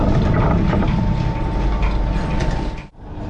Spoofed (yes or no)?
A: no